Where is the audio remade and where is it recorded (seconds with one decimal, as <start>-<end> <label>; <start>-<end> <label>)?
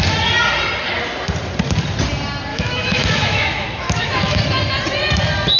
0.0-2.5 recorded; 2.5-4.4 remade; 4.4-5.6 recorded